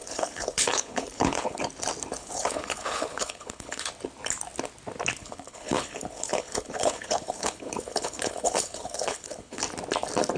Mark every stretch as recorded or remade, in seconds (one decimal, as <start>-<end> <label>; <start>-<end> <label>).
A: 0.0-1.6 remade; 1.6-2.2 recorded; 2.2-3.9 remade; 3.9-5.2 recorded; 5.2-9.6 remade; 9.6-10.4 recorded